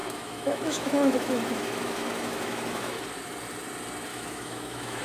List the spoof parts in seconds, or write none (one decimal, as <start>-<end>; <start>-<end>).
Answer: 0.0-3.0; 4.1-5.0